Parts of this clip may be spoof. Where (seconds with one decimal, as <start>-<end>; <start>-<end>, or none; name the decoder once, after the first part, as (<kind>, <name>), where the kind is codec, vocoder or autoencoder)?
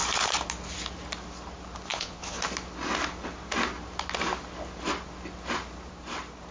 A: 1.9-2.4 (vocoder, Vocos)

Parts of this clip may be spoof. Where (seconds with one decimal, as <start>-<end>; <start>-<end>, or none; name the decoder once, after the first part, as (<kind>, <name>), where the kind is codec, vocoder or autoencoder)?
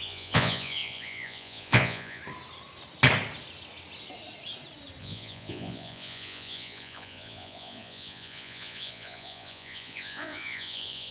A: 0.0-2.2 (vocoder, Vocos); 5.0-11.1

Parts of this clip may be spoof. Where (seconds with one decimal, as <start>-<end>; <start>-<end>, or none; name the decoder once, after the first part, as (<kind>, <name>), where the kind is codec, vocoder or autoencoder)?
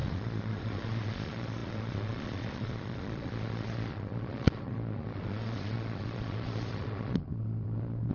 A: 0.0-8.1 (vocoder, Vocos)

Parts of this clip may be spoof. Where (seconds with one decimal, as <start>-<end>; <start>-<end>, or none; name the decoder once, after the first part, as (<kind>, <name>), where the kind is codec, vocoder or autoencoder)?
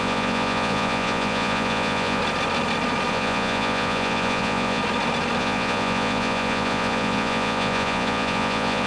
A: 0.0-2.2 (vocoder, Vocos); 3.1-4.8; 5.4-8.9